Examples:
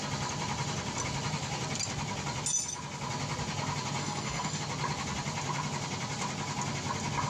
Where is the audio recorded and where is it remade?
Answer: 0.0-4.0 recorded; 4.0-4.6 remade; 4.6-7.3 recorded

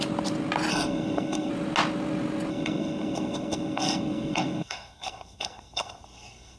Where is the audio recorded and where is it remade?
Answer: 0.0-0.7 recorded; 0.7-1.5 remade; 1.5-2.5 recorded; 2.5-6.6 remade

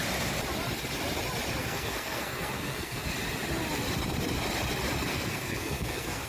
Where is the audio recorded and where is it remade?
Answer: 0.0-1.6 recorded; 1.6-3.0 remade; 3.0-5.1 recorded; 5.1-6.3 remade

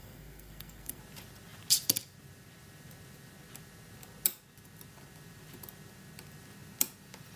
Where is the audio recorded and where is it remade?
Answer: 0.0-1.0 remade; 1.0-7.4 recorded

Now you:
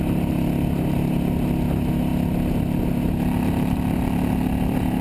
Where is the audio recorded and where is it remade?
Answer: 0.0-5.0 recorded